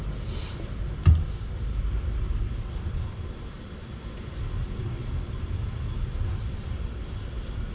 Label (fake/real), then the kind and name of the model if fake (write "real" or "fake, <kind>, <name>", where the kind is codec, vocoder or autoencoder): real